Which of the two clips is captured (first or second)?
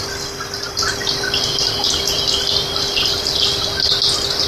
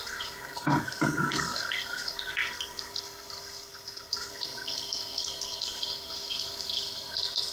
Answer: first